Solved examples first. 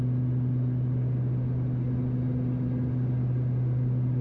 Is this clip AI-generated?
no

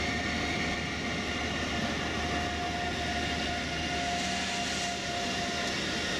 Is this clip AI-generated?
no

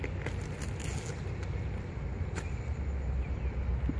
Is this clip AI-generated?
no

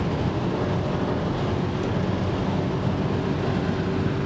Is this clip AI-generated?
no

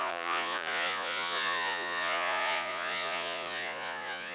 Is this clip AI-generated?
yes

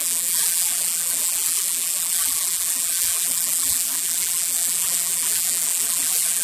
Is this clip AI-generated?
yes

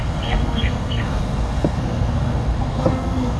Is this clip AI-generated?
yes